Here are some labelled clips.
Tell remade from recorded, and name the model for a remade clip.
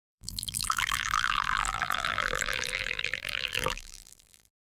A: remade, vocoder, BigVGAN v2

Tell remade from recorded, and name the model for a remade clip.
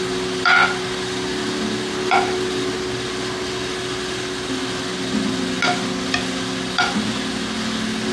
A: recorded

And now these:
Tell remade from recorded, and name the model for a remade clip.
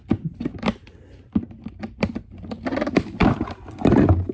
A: recorded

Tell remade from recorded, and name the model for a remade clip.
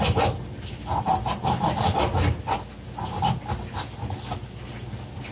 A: recorded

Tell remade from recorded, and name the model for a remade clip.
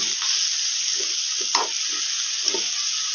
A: recorded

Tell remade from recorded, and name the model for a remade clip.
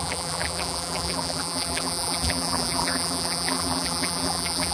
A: remade, vocoder, BigVGAN v2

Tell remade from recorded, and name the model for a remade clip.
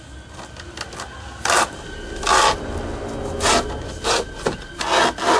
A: recorded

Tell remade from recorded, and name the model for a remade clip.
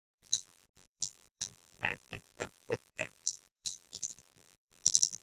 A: remade, vocoder, BigVGAN v2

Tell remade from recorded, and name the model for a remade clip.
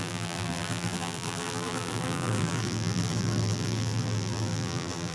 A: remade, vocoder, BigVGAN v2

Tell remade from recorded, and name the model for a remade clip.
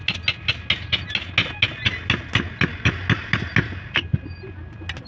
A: recorded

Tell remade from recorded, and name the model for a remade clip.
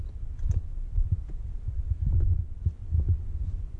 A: recorded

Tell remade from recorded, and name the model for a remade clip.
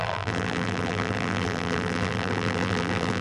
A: remade, vocoder, BigVGAN v2